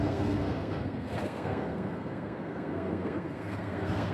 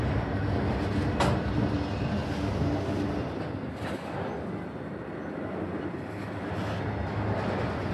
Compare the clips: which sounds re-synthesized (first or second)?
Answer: first